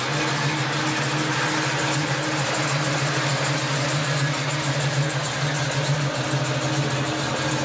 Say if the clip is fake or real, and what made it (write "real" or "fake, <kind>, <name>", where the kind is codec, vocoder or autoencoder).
real